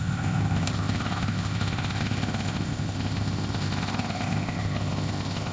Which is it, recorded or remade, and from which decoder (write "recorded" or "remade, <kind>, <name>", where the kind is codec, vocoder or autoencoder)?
remade, codec, ZipCodec